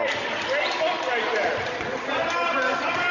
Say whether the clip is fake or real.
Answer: real